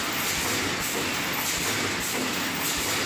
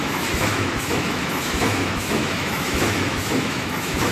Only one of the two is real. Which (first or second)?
first